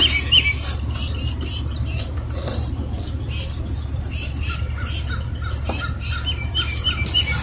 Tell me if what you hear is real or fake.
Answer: real